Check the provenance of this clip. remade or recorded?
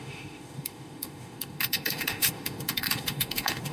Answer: remade